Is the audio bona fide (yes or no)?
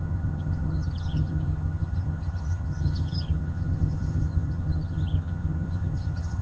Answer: no